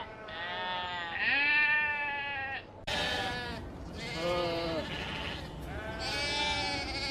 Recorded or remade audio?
recorded